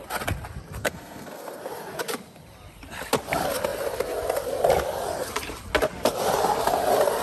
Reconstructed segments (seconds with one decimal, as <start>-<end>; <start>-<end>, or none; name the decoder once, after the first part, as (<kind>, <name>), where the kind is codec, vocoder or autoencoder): 0.8-1.6 (codec, SNAC)